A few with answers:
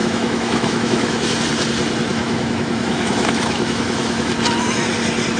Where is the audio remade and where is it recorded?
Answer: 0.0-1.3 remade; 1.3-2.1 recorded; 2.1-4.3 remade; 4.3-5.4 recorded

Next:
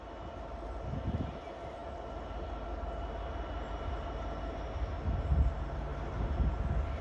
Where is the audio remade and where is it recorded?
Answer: 0.0-7.0 recorded

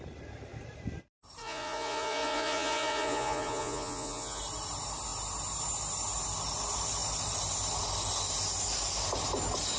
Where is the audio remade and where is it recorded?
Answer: 0.0-1.4 recorded; 1.4-4.4 remade; 4.4-9.8 recorded